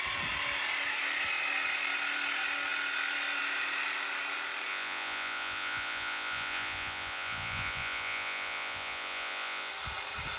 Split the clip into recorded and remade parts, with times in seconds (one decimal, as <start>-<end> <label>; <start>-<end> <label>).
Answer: 0.0-4.7 recorded; 4.7-9.7 remade; 9.7-10.4 recorded